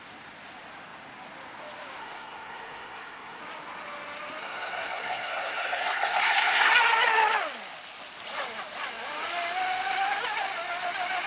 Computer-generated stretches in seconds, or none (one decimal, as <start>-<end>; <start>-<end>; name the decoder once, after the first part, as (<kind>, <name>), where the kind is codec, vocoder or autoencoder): 2.0-3.4 (codec, SNAC); 4.4-6.7